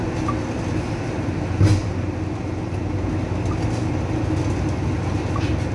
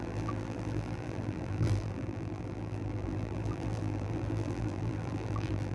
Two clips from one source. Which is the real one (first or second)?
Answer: first